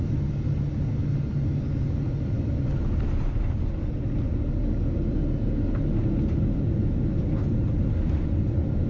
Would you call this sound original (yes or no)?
yes